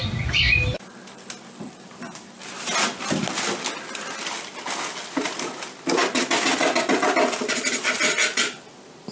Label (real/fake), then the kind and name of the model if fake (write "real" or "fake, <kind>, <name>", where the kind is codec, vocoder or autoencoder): real